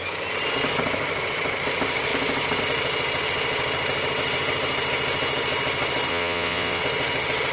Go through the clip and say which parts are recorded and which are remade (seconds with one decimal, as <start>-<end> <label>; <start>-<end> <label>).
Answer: 0.0-6.1 recorded; 6.1-6.8 remade; 6.8-7.5 recorded